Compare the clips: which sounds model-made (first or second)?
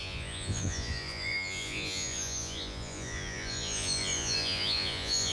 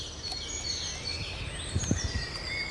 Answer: first